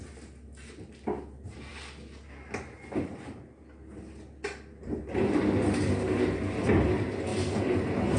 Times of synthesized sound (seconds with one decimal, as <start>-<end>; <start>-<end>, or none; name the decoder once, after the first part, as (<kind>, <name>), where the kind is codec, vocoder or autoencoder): 7.3-8.2 (vocoder, BigVGAN v2)

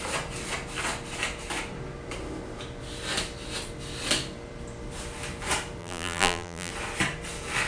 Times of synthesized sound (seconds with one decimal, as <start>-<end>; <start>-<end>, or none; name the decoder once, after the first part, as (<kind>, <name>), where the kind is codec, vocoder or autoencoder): 5.8-6.7 (vocoder, BigVGAN v2)

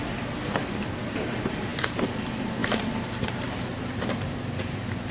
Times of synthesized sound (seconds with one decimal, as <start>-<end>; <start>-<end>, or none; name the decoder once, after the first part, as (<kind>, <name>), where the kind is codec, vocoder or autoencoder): 0.5-5.1 (vocoder, BigVGAN v2)

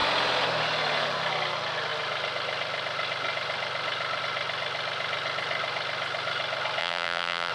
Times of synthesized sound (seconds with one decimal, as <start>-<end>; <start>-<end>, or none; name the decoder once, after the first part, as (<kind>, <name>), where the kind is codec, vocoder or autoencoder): 6.8-7.5 (vocoder, BigVGAN v2)